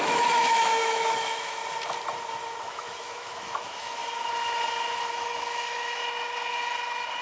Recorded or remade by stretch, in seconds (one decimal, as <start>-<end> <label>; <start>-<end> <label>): 0.0-1.6 remade; 1.6-2.6 recorded; 2.6-4.0 remade; 4.0-5.0 recorded; 5.0-6.0 remade; 6.0-7.2 recorded